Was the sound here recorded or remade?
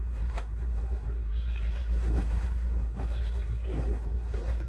remade